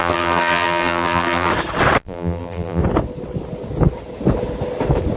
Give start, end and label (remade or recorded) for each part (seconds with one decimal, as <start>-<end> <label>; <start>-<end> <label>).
0.0-1.5 remade; 1.5-2.0 recorded; 2.0-2.8 remade; 2.8-5.2 recorded